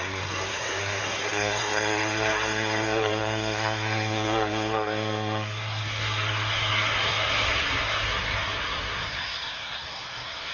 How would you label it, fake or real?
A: fake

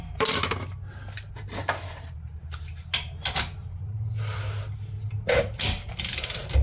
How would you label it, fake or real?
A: real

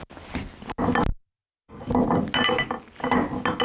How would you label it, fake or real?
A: real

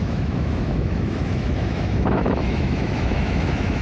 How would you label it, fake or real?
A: fake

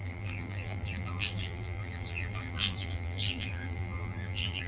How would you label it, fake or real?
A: fake